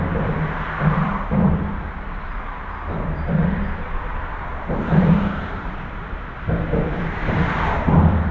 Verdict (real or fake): fake